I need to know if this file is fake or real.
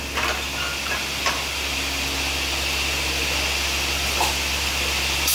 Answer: real